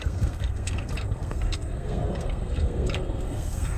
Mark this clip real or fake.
fake